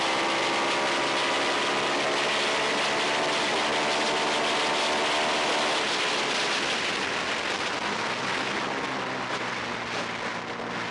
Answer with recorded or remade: recorded